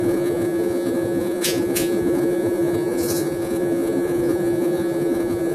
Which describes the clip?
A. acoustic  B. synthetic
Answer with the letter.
B